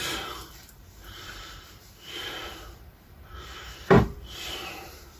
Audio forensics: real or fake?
fake